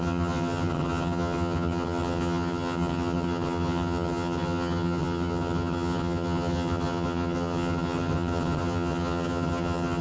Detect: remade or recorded remade